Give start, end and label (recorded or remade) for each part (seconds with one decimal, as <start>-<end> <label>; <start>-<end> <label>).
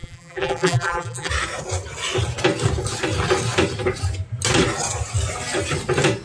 0.0-1.3 remade; 1.3-6.2 recorded